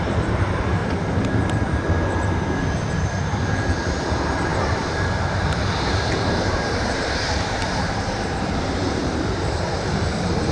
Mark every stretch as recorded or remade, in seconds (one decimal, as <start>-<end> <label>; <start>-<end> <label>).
0.0-0.8 remade; 0.8-3.0 recorded; 3.0-10.5 remade